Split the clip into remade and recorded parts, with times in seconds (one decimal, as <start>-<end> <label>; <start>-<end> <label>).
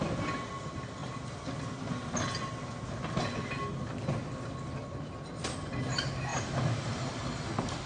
0.0-7.9 recorded